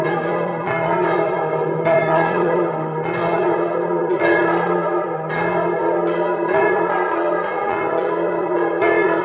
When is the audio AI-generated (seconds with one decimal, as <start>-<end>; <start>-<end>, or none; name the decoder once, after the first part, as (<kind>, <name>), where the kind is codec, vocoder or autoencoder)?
0.0-9.2 (vocoder, Vocos)